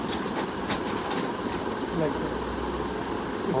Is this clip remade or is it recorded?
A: recorded